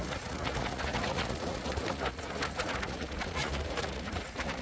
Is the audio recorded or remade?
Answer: remade